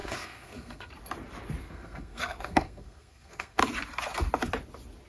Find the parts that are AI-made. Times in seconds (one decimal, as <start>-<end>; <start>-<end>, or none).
0.0-0.9; 1.6-3.6